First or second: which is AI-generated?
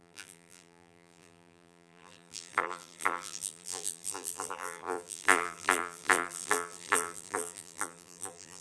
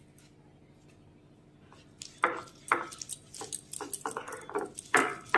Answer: first